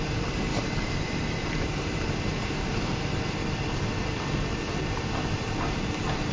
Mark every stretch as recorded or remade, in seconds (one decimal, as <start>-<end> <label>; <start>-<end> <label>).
0.0-6.3 remade